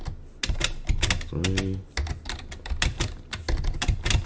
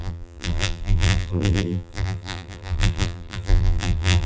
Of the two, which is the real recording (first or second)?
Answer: first